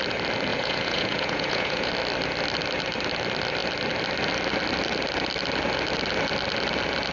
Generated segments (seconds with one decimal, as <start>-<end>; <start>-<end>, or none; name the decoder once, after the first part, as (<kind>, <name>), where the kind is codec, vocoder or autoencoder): 0.5-1.9 (vocoder, Vocos)